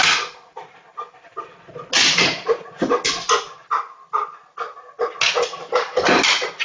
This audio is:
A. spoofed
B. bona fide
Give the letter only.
B